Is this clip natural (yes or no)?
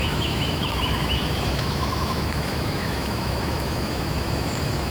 no